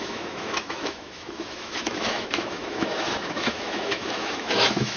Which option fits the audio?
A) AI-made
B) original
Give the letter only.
A